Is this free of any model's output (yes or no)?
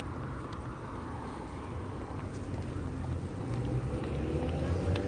yes